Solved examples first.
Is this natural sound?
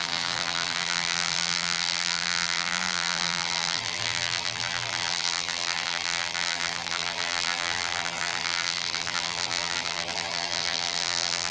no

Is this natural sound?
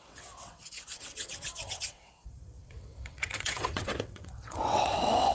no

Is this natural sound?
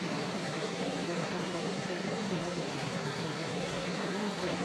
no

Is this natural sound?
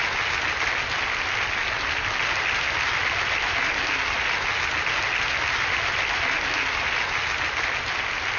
yes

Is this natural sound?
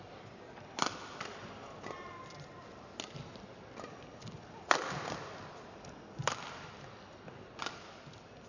yes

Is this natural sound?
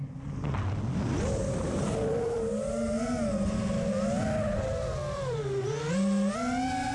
yes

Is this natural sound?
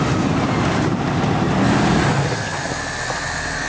yes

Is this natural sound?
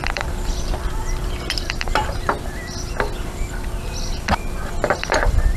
no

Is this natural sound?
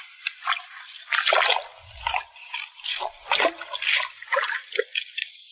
yes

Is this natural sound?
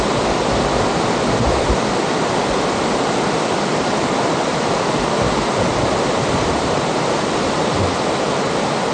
yes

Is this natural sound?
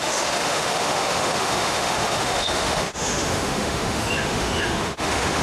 no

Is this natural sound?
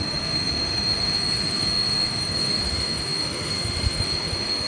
no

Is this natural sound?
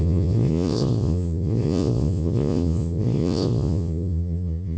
no